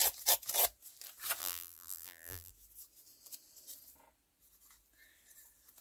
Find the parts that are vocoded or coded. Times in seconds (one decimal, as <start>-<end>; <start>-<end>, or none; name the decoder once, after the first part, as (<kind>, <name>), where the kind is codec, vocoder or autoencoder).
1.4-2.5 (vocoder, BigVGAN v2)